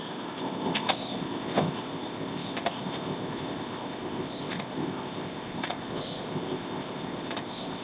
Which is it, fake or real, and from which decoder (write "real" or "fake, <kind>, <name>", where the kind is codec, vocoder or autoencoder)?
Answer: fake, codec, ZipCodec